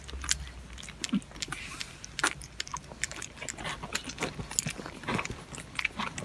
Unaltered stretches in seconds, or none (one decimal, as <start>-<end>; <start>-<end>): 0.0-6.2